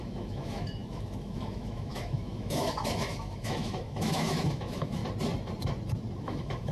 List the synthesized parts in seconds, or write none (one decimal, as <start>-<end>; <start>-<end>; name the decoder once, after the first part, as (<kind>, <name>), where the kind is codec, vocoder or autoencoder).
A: 0.0-5.0 (autoencoder, DAC-VAE); 6.2-6.7